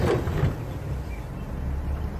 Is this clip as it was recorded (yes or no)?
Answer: yes